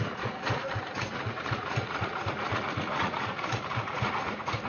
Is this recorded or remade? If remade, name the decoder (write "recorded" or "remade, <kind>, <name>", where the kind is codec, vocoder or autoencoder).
remade, vocoder, Vocos